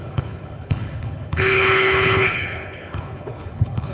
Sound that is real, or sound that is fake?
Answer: fake